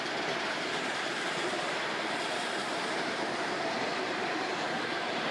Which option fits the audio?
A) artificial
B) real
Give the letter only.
A